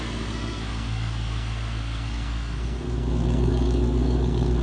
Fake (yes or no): yes